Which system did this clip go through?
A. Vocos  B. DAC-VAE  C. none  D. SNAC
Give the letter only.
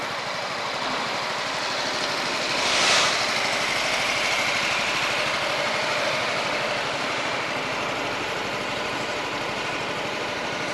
C